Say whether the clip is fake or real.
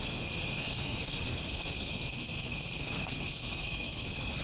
fake